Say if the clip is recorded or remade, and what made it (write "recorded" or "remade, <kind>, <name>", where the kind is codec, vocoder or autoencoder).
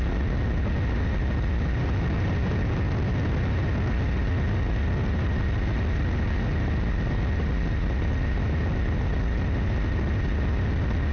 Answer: recorded